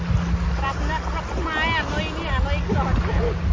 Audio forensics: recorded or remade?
recorded